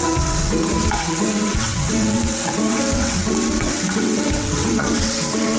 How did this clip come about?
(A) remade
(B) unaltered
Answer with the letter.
A